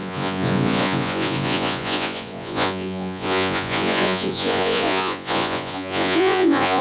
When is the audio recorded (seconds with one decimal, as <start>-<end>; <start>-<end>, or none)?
none